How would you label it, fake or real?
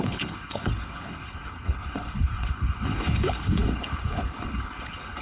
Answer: fake